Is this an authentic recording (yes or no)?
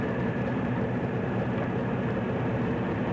no